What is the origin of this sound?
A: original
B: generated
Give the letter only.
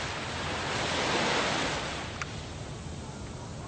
A